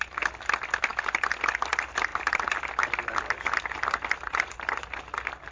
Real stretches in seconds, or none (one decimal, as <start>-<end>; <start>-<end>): 0.0-5.5